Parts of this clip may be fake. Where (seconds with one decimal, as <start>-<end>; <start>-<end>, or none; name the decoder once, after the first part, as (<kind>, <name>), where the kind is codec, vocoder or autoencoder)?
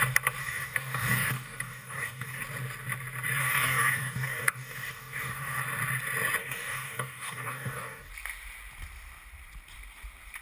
0.4-2.4 (codec, DAC); 3.4-5.6; 6.4-8.1